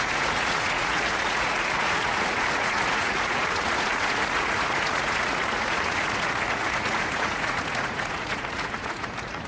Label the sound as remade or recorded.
remade